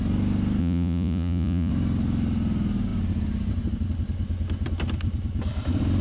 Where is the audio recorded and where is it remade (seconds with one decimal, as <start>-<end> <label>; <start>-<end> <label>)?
0.0-0.6 recorded; 0.6-1.7 remade; 1.7-6.0 recorded